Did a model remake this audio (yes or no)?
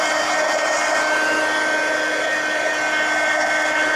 no